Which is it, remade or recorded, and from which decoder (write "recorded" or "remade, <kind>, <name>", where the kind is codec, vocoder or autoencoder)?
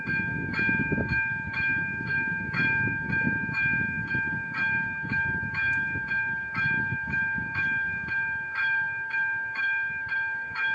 remade, codec, DAC